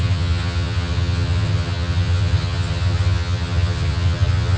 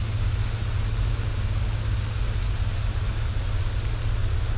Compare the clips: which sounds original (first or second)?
second